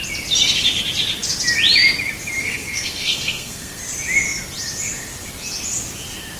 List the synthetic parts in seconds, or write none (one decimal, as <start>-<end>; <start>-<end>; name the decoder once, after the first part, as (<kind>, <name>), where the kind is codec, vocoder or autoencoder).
2.4-3.8 (codec, SNAC)